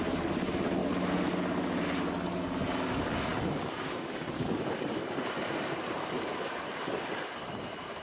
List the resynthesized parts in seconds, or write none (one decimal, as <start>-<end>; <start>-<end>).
0.0-0.8; 2.9-8.0